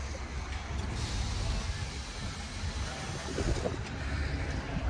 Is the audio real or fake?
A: real